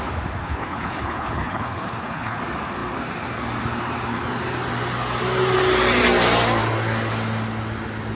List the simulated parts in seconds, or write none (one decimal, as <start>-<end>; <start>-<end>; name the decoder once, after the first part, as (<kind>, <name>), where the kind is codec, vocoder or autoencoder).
0.4-2.4 (codec, HILCodec)